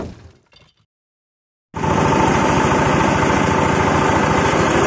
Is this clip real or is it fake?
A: real